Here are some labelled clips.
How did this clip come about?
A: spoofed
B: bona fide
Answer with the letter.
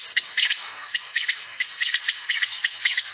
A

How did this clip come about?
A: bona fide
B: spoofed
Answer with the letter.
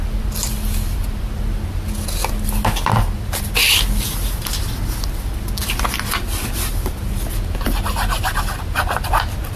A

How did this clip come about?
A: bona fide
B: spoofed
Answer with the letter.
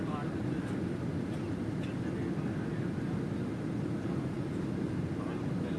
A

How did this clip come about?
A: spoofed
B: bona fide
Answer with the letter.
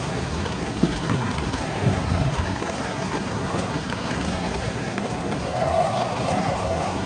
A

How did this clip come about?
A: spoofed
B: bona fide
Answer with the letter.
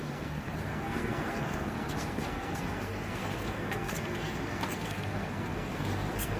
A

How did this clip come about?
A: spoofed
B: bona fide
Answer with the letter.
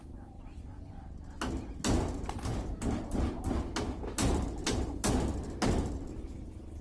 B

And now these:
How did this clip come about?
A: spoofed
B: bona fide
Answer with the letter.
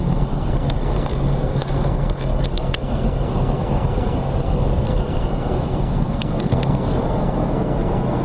A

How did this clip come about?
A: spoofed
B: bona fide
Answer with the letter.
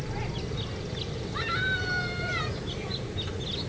B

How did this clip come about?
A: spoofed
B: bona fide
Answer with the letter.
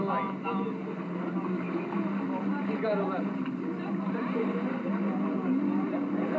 B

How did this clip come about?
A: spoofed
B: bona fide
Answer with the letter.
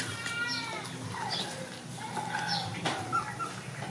B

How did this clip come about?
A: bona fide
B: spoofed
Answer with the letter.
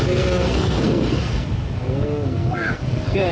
B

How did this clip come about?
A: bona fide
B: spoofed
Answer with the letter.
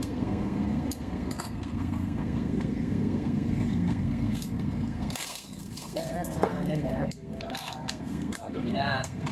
B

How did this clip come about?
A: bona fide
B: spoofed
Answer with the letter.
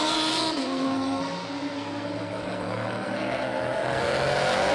B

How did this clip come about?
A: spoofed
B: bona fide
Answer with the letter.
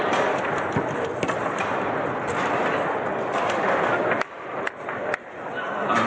B